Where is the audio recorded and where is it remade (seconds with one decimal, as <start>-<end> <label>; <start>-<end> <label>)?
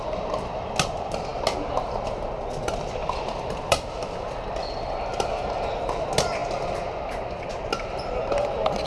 0.0-3.0 recorded; 3.0-4.6 remade; 4.6-8.9 recorded